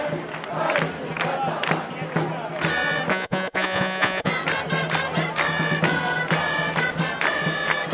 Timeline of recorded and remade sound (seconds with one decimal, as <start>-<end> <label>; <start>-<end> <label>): 0.0-3.1 recorded; 3.1-4.3 remade; 4.3-7.9 recorded